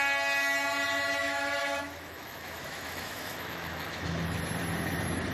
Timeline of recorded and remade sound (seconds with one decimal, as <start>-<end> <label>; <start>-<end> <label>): 0.0-1.2 recorded; 1.2-4.4 remade; 4.4-5.3 recorded